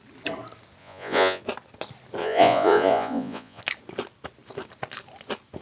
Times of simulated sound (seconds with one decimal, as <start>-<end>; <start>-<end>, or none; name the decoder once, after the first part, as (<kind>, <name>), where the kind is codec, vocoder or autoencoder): 0.8-1.4 (vocoder, Vocos); 2.2-3.6